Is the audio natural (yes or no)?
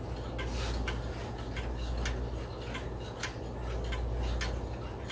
yes